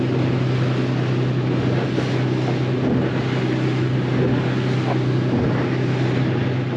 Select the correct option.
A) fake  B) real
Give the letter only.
B